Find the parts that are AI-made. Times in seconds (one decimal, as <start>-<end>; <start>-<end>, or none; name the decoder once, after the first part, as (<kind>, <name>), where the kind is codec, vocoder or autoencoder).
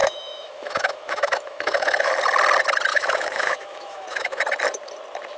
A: 0.0-2.1 (autoencoder, DAC-VAE); 2.9-4.4